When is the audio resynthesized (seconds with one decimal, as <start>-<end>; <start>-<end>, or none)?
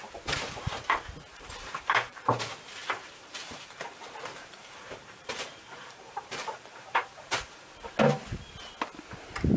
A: 1.3-2.4; 2.8-7.9